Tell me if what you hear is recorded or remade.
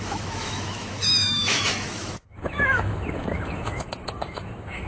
remade